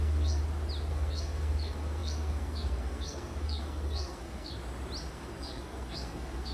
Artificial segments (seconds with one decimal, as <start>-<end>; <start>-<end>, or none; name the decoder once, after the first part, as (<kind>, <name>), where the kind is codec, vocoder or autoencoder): 0.0-0.4 (codec, SNAC); 0.9-4.6; 5.1-6.5